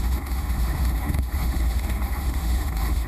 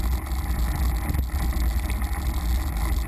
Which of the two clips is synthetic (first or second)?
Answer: first